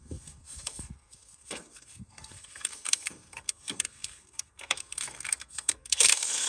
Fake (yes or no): yes